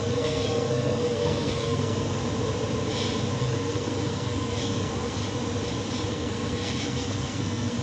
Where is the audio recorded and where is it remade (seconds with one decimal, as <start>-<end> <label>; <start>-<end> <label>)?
0.0-2.2 remade; 2.2-3.4 recorded; 3.4-5.2 remade; 5.2-6.1 recorded; 6.1-7.8 remade